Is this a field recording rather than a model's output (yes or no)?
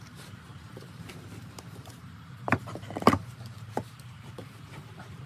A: no